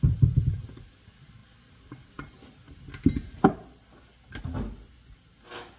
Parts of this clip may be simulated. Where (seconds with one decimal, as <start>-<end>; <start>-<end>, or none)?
none